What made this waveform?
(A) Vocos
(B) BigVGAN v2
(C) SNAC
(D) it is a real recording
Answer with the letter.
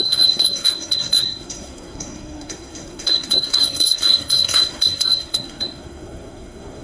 C